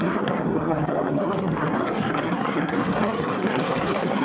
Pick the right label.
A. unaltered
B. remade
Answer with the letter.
B